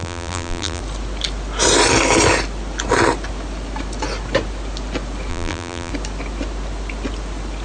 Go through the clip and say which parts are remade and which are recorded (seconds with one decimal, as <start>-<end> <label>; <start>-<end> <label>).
0.0-0.8 remade; 0.8-5.3 recorded; 5.3-5.9 remade; 5.9-7.6 recorded